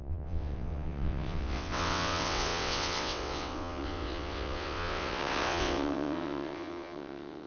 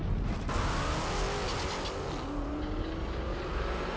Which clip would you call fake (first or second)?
first